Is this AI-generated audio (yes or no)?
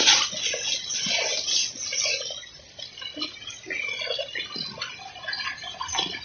no